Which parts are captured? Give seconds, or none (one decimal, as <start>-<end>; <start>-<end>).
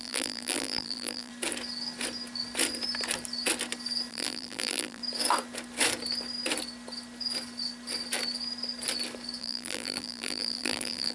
1.3-4.1; 5.0-9.4